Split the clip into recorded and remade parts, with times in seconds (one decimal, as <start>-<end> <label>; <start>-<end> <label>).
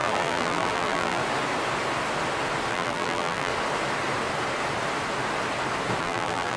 0.0-1.2 remade; 1.2-2.7 recorded; 2.7-3.5 remade; 3.5-6.0 recorded; 6.0-6.6 remade